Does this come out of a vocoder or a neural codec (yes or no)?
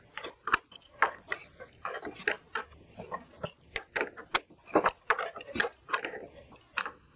no